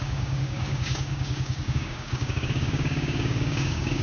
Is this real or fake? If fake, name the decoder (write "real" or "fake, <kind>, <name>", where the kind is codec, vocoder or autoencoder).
fake, codec, DAC